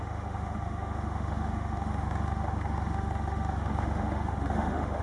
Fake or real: fake